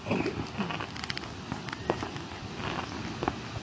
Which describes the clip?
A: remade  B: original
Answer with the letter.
B